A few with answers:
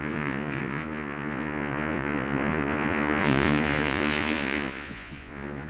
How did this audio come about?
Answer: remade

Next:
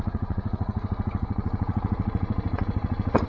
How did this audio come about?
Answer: remade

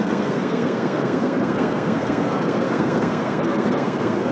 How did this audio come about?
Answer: remade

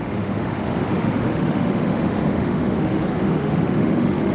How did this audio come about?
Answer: remade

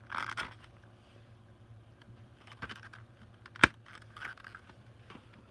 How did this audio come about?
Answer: recorded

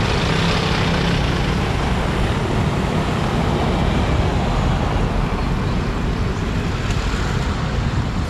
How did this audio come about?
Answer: recorded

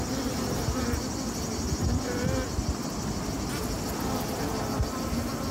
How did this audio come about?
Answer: recorded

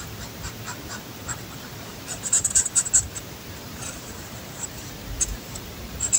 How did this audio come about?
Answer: remade